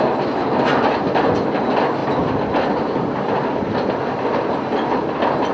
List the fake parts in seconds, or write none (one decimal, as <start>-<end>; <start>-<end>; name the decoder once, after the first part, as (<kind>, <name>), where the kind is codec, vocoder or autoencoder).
none